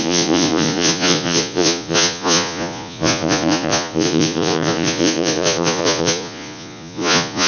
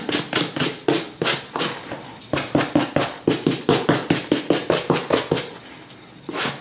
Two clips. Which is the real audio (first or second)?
second